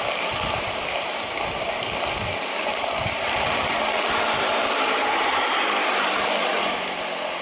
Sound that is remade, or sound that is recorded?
remade